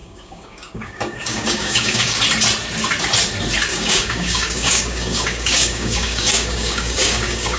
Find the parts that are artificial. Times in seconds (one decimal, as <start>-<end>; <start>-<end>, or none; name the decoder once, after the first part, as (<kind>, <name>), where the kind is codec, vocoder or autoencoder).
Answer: 0.0-2.2 (codec, DAC); 3.7-7.6